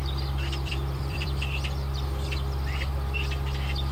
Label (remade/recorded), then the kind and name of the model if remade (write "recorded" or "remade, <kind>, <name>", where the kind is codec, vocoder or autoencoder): remade, vocoder, BigVGAN v2